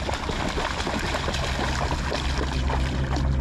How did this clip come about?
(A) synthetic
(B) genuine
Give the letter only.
B